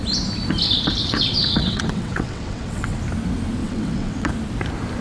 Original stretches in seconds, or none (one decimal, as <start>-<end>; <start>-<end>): 0.0-1.0; 3.0-3.6; 4.3-5.0